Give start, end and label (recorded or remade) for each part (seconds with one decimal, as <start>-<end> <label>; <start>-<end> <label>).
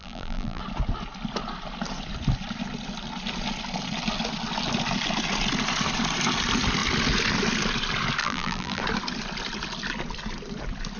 0.0-0.6 remade; 0.6-8.2 recorded; 8.2-8.8 remade; 8.8-11.0 recorded